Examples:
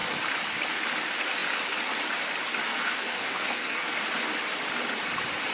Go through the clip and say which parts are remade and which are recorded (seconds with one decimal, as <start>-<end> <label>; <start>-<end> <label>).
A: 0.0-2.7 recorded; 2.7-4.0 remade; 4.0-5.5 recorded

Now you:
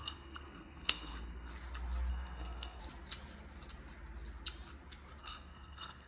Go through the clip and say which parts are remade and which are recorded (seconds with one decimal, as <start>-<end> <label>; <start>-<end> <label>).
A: 0.0-1.5 remade; 1.5-2.1 recorded; 2.1-2.8 remade; 2.8-5.2 recorded; 5.2-6.1 remade

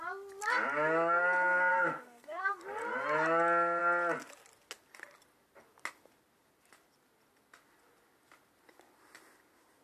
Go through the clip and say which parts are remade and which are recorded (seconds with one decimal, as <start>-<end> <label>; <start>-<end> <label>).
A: 0.0-1.7 recorded; 1.7-2.6 remade; 2.6-9.8 recorded

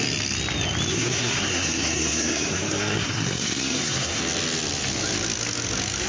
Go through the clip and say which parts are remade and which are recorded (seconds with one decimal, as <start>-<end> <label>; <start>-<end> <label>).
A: 0.0-0.9 recorded; 0.9-4.2 remade; 4.2-6.1 recorded

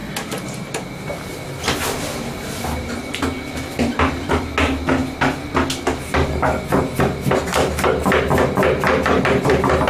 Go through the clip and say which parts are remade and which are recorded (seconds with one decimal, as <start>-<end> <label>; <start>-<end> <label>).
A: 0.0-9.9 recorded

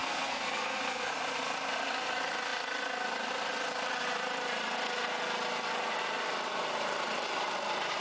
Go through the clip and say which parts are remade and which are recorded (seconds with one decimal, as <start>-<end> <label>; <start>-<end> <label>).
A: 0.0-1.1 remade; 1.1-8.0 recorded

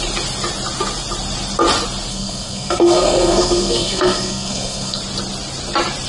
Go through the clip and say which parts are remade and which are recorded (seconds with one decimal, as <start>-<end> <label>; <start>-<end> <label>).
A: 0.0-2.1 recorded; 2.1-5.0 remade; 5.0-6.1 recorded

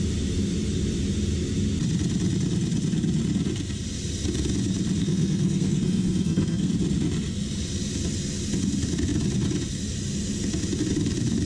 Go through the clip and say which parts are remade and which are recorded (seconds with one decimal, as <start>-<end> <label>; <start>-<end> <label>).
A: 0.0-5.0 recorded; 5.0-6.7 remade; 6.7-11.5 recorded